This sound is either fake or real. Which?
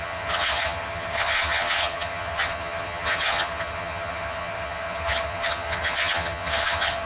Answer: fake